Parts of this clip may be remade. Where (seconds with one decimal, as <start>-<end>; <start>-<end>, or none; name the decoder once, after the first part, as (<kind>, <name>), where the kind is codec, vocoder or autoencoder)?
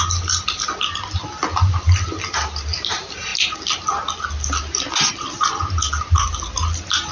none